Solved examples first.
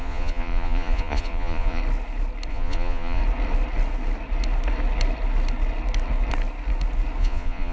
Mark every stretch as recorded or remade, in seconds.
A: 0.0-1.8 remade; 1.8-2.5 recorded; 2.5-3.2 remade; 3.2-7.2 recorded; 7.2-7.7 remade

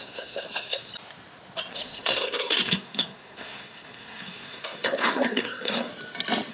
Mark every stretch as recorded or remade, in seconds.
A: 0.0-0.9 remade; 0.9-1.7 recorded; 1.7-5.9 remade; 5.9-6.5 recorded

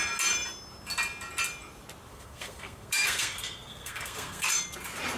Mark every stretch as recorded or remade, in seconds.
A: 0.0-2.1 recorded; 2.1-4.5 remade; 4.5-5.2 recorded

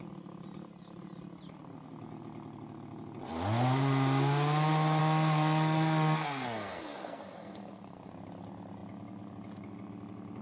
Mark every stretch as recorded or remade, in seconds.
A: 0.0-5.0 recorded; 5.0-8.1 remade; 8.1-10.4 recorded

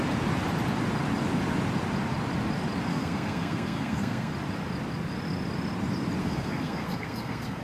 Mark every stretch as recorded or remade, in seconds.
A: 0.0-2.9 recorded; 2.9-4.3 remade; 4.3-6.2 recorded; 6.2-7.6 remade